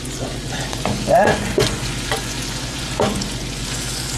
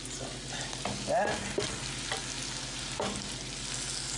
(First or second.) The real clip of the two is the second